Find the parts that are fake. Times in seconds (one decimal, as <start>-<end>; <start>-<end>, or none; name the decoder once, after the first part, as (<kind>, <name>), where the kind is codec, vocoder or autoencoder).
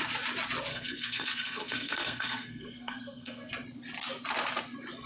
0.7-3.5 (codec, SNAC)